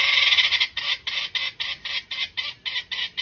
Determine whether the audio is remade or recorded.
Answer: recorded